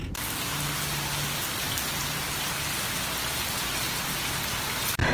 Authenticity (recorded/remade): recorded